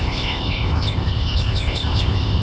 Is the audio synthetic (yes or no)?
yes